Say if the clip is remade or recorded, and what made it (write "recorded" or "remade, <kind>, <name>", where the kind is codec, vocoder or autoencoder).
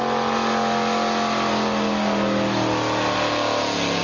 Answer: recorded